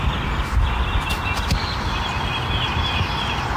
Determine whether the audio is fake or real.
real